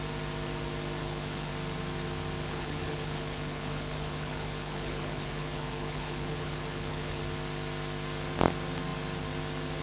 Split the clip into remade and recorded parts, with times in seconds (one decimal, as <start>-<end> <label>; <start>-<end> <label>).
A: 0.0-1.0 recorded; 1.0-1.5 remade; 1.5-2.4 recorded; 2.4-7.2 remade; 7.2-9.8 recorded